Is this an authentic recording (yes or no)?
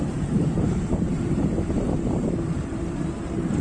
no